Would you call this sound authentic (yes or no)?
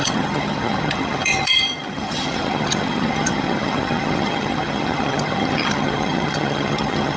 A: no